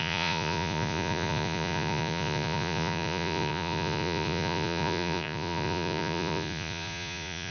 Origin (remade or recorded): remade